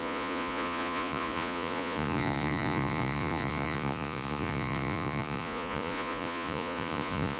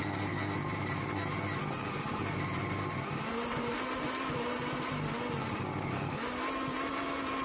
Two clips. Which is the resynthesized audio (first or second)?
first